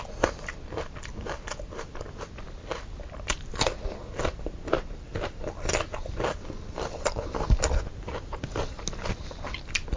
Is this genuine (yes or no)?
yes